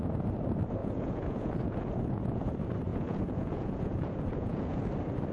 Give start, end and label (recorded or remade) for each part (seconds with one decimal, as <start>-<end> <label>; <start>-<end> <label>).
0.0-0.8 recorded; 0.8-2.5 remade; 2.5-2.9 recorded; 2.9-4.8 remade; 4.8-5.3 recorded